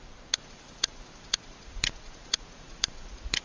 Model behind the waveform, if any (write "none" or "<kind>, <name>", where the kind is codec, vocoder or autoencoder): vocoder, Vocos